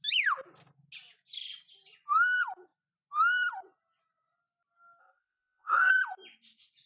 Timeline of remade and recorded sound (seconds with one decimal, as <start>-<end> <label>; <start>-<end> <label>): 0.0-5.0 recorded; 5.0-5.9 remade; 5.9-6.9 recorded